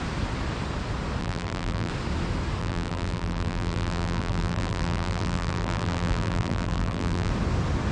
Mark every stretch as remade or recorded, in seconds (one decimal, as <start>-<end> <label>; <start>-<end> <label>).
0.0-1.2 recorded; 1.2-1.9 remade; 1.9-2.6 recorded; 2.6-7.3 remade; 7.3-7.9 recorded